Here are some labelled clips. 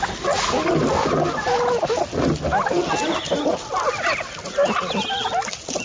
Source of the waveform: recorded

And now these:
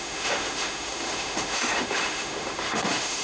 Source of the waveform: remade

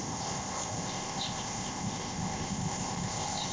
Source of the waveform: remade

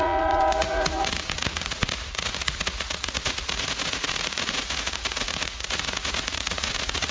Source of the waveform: remade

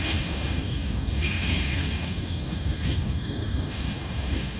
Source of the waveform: remade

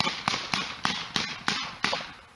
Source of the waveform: recorded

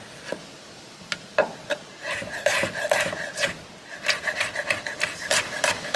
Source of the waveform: recorded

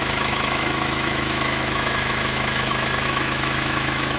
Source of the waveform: remade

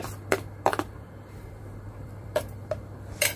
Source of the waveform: remade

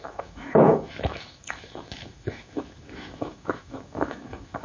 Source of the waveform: remade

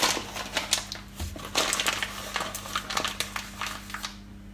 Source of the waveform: recorded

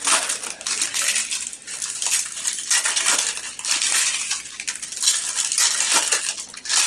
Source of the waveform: recorded